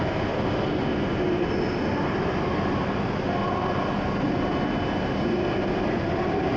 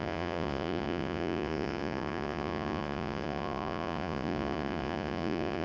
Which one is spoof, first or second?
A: second